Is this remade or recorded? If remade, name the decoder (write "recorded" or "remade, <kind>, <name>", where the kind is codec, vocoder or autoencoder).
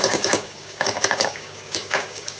remade, codec, DAC